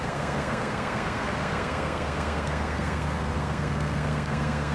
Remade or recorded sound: remade